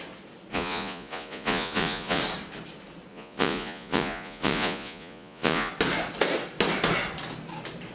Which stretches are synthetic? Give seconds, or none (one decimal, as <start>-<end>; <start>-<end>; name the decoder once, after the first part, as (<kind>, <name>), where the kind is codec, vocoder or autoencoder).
0.5-2.2 (vocoder, Vocos); 3.1-5.7